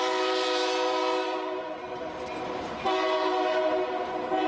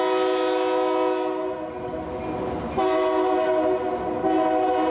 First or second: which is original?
second